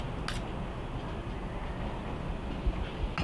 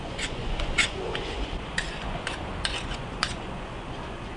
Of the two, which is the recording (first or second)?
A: first